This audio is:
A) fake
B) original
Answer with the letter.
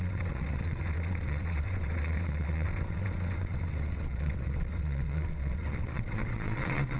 A